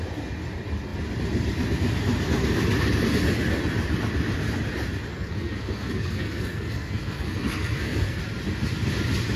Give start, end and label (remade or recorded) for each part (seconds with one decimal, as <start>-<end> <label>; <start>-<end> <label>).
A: 0.0-5.1 recorded; 5.1-8.2 remade; 8.2-9.4 recorded